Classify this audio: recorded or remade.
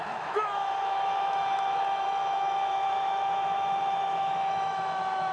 remade